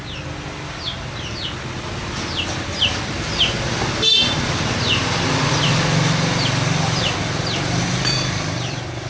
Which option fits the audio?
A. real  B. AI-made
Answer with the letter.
A